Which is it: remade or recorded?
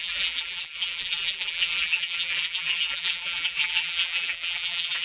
remade